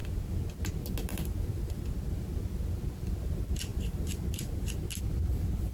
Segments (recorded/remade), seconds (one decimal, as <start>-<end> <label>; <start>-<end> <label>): 0.0-1.1 recorded; 1.1-1.9 remade; 1.9-3.7 recorded; 3.7-4.4 remade; 4.4-5.7 recorded